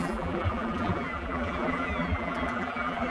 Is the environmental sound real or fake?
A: fake